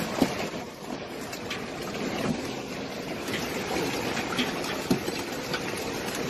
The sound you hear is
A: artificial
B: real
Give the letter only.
B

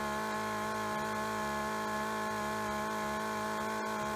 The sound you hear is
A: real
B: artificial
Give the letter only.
A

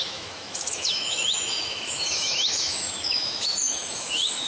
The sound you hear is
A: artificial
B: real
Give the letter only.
A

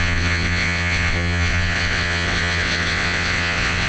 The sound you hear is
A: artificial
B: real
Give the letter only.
A